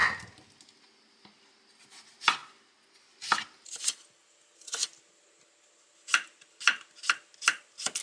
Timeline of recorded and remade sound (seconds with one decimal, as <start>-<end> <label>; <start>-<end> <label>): 0.0-8.0 recorded